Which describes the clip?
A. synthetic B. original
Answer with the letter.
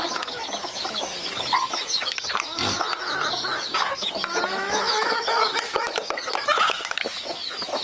A